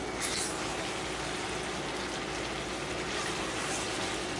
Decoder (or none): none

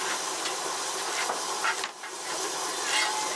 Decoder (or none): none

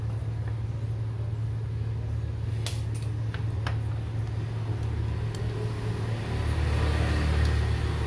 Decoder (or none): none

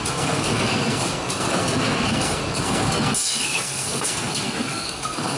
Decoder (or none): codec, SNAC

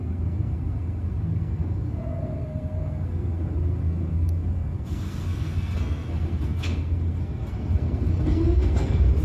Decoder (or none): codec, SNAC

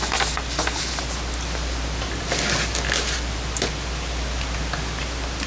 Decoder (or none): none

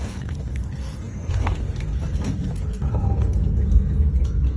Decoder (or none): codec, SNAC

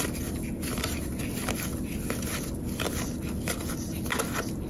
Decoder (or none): none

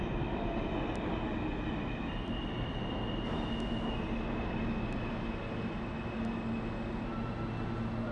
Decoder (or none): none